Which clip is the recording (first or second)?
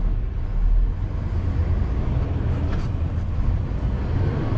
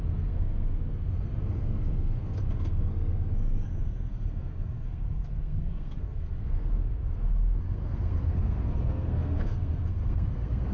first